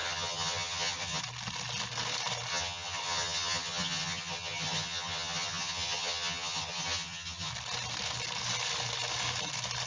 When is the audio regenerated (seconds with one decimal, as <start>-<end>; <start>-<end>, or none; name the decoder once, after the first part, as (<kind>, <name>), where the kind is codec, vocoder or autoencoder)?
0.0-1.2 (vocoder, HiFi-GAN); 2.5-7.5